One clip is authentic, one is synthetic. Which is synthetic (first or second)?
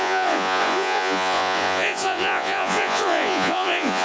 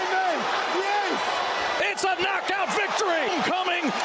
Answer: first